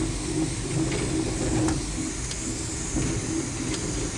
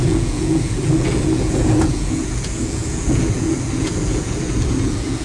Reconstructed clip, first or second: second